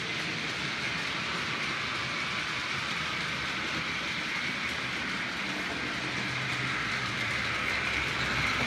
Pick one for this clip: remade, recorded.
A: recorded